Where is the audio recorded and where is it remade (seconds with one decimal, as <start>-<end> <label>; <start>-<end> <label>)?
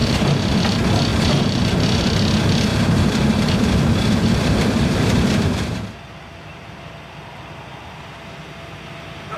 0.0-0.6 remade; 0.6-1.1 recorded; 1.1-1.6 remade; 1.6-2.7 recorded; 2.7-6.9 remade; 6.9-9.4 recorded